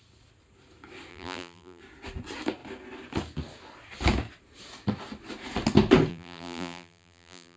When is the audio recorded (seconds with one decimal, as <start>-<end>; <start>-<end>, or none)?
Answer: 0.0-1.1; 1.8-6.1